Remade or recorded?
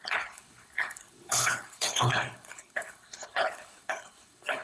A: remade